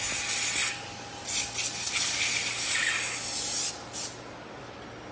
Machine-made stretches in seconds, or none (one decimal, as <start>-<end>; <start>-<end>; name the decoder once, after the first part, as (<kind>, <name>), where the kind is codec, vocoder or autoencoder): none